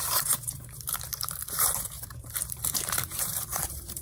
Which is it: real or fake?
fake